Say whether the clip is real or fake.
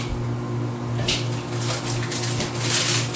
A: real